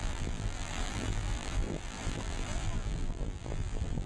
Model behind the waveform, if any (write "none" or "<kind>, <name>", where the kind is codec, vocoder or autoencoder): vocoder, BigVGAN v2